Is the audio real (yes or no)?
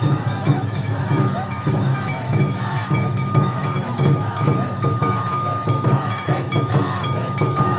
no